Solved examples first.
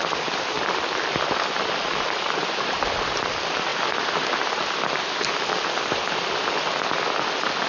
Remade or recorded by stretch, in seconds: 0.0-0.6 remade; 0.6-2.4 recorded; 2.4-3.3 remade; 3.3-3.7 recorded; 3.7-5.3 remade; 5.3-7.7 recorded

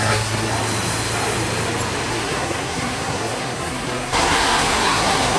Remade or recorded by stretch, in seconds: 0.0-0.5 remade; 0.5-2.1 recorded; 2.1-5.4 remade

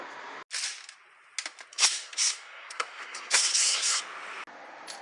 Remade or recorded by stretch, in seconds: 0.0-1.7 recorded; 1.7-4.0 remade; 4.0-5.0 recorded

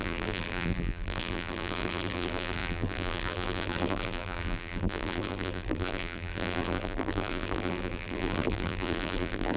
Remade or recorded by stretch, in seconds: 0.0-9.6 remade

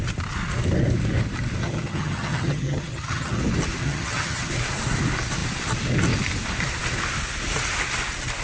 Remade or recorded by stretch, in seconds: 0.0-1.6 recorded; 1.6-3.4 remade; 3.4-3.8 recorded; 3.8-4.5 remade; 4.5-8.4 recorded

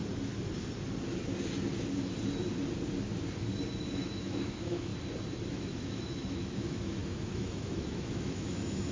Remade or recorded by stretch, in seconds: 0.0-3.8 recorded; 3.8-4.9 remade; 4.9-5.5 recorded; 5.5-8.9 remade

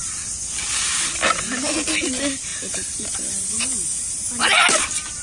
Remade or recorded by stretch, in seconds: 0.0-2.5 recorded; 2.5-4.4 remade; 4.4-5.2 recorded

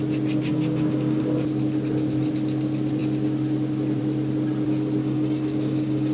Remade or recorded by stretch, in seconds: 0.0-0.5 recorded; 0.5-1.2 remade; 1.2-5.0 recorded; 5.0-6.1 remade